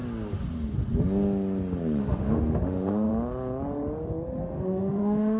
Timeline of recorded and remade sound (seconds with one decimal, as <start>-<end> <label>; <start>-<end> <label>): 0.0-2.0 recorded; 2.0-3.1 remade; 3.1-4.4 recorded; 4.4-5.4 remade